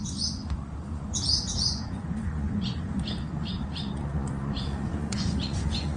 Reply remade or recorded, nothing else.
remade